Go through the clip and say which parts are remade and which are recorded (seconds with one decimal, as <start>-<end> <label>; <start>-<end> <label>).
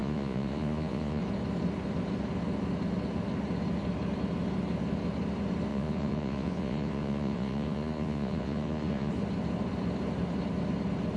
0.0-1.2 remade; 1.2-5.7 recorded; 5.7-9.1 remade; 9.1-11.2 recorded